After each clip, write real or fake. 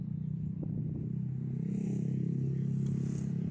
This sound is real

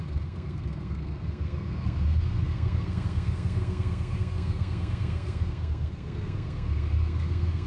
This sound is fake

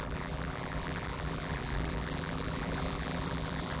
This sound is fake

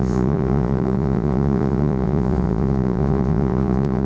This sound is fake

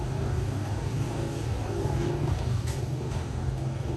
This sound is fake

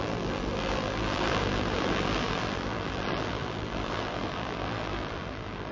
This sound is fake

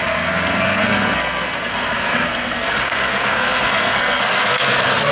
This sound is fake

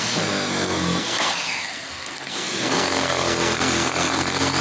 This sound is fake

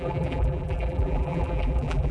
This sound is fake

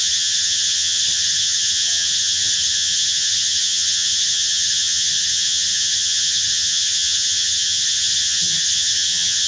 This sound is fake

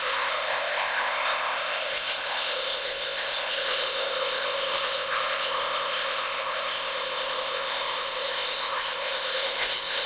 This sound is fake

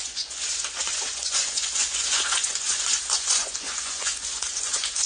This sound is fake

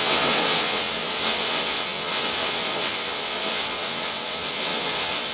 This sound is fake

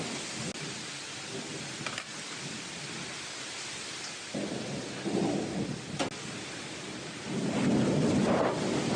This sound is real